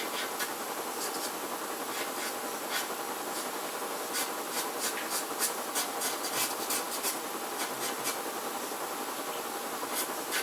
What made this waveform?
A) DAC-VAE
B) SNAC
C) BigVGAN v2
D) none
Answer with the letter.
D